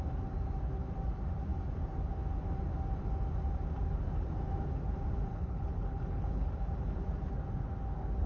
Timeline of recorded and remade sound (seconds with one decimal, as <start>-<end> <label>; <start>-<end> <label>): 0.0-5.3 recorded; 5.3-6.5 remade; 6.5-8.3 recorded

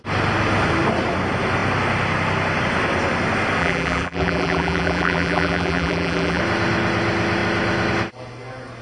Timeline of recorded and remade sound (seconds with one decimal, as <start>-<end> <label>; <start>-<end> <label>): 0.0-3.6 recorded; 3.6-6.4 remade; 6.4-8.8 recorded

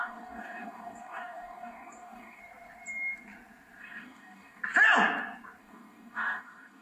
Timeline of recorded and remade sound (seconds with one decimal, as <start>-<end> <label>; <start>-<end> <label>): 0.0-2.4 remade; 2.4-3.8 recorded; 3.8-4.6 remade; 4.6-5.6 recorded; 5.6-6.8 remade